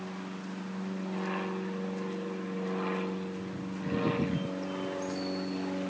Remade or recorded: recorded